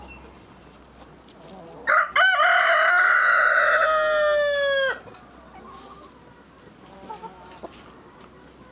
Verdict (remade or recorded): recorded